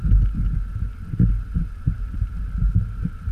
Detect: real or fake real